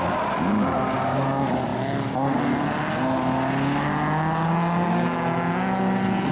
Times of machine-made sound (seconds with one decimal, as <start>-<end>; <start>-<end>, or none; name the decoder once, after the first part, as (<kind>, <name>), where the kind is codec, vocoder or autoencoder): none